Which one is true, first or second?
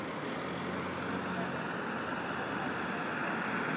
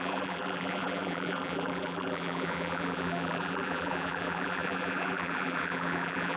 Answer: first